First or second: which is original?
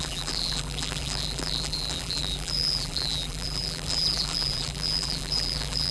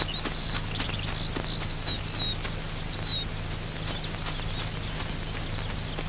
second